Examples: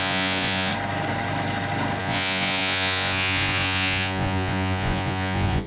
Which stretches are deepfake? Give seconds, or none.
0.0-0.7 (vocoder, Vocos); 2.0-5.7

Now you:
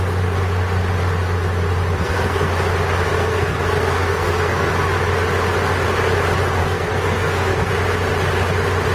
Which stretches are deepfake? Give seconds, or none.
2.0-2.5 (codec, SNAC); 3.1-4.7; 6.6-7.7

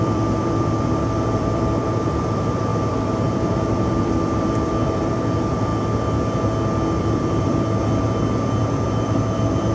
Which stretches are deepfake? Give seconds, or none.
0.0-5.7 (vocoder, BigVGAN v2); 7.0-9.7

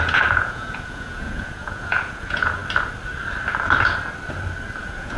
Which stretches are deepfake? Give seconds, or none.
0.0-2.6 (vocoder, Vocos); 4.8-5.2